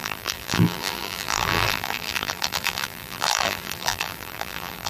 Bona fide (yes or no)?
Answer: no